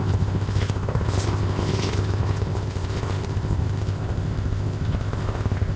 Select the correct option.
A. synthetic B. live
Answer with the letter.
A